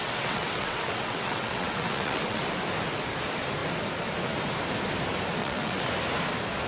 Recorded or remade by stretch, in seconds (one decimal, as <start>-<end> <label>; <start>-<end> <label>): 0.0-2.4 remade; 2.4-5.4 recorded; 5.4-5.9 remade; 5.9-6.7 recorded

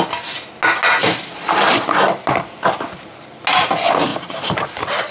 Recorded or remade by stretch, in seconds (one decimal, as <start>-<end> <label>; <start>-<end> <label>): 0.0-4.1 recorded; 4.1-5.1 remade

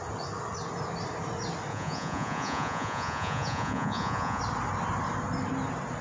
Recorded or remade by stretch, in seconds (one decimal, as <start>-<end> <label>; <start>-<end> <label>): 0.0-1.7 recorded; 1.7-4.4 remade; 4.4-6.0 recorded

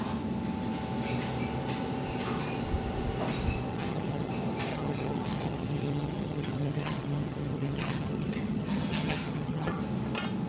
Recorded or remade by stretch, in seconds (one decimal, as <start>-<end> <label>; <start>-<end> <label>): 0.0-3.7 recorded; 3.7-4.3 remade; 4.3-4.7 recorded; 4.7-9.8 remade; 9.8-10.5 recorded

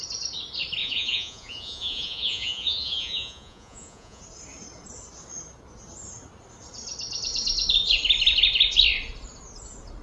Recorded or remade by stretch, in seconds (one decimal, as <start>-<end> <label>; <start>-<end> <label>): 0.0-0.8 recorded; 0.8-4.2 remade; 4.2-10.0 recorded